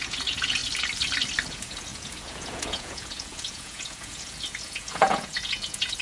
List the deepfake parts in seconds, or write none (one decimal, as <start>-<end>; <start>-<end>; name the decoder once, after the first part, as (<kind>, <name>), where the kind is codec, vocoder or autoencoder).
0.0-0.6 (vocoder, Vocos); 1.5-6.0